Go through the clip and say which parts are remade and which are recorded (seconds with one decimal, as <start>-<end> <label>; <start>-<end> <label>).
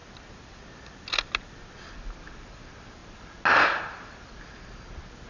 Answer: 0.0-5.3 recorded